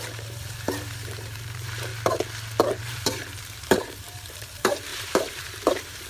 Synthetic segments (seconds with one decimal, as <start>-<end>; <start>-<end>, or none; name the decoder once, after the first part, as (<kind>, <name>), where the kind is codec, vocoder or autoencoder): 0.0-1.9 (vocoder, BigVGAN v2); 2.8-6.1